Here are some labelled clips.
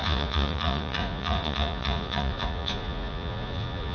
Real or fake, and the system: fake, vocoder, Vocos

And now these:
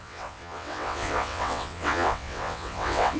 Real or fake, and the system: fake, vocoder, WaveNeXt